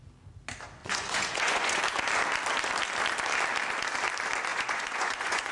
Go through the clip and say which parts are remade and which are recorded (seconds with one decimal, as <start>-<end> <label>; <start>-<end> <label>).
0.0-0.8 recorded; 0.8-1.8 remade; 1.8-4.5 recorded; 4.5-5.5 remade